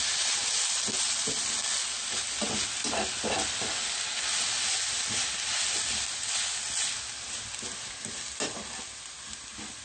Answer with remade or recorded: recorded